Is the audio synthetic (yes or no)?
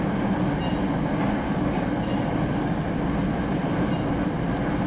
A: no